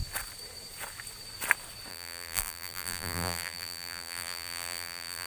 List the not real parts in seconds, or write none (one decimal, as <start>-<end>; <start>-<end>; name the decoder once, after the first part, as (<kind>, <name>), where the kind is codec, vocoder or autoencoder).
1.9-5.3 (vocoder, BigVGAN v2)